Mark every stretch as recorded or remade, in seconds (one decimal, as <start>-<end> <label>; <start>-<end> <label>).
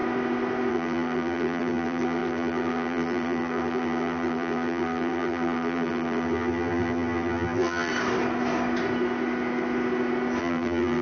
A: 0.0-0.7 recorded; 0.7-7.9 remade; 7.9-10.4 recorded; 10.4-11.0 remade